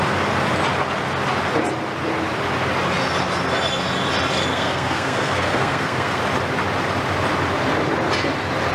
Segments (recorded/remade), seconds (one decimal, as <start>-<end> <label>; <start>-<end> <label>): 0.0-4.5 recorded; 4.5-6.2 remade; 6.2-8.7 recorded